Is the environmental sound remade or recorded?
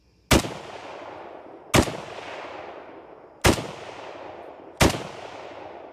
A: recorded